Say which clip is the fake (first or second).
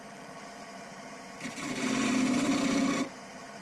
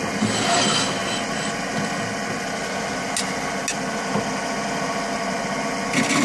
first